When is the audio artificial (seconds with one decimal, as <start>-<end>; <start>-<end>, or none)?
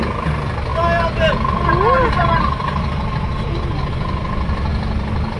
none